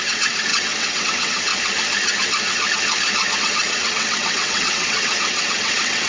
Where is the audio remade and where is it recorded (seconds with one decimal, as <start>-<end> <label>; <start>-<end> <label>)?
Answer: 0.0-1.5 remade; 1.5-3.4 recorded; 3.4-6.1 remade